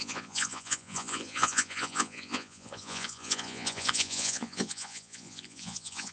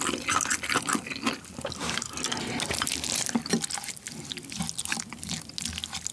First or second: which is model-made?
first